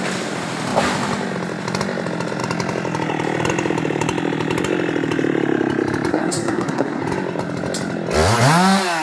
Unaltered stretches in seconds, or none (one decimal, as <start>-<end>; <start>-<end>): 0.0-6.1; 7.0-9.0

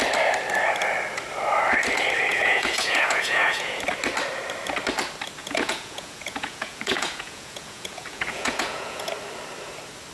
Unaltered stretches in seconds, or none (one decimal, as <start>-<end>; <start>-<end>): 0.0-2.3; 3.8-5.4; 9.1-10.1

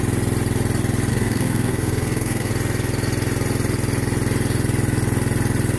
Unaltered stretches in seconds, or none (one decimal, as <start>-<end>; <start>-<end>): 0.0-1.1; 2.5-5.8